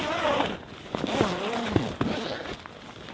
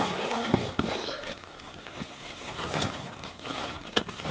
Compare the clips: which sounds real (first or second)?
first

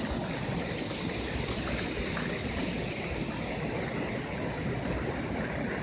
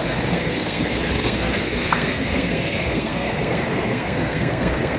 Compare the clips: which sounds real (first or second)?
first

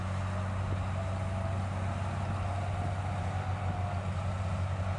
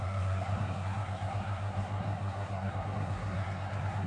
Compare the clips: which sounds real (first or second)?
first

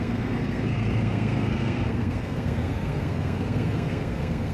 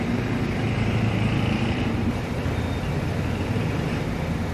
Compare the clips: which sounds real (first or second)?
second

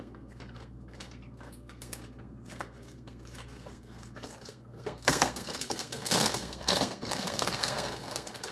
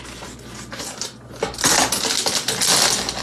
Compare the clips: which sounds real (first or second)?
second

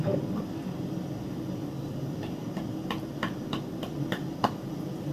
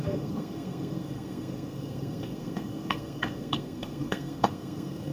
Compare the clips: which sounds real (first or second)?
first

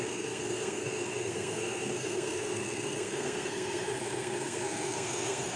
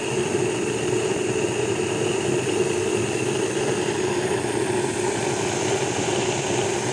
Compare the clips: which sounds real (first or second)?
second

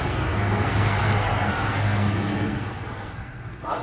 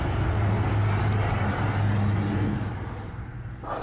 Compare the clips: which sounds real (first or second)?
second